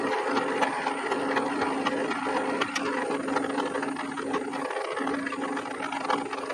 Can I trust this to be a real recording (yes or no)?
yes